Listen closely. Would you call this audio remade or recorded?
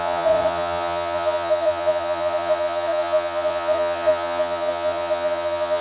remade